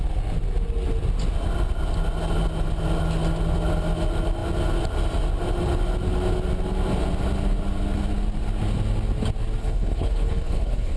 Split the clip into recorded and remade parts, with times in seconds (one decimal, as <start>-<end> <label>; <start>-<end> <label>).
0.0-9.6 recorded; 9.6-11.0 remade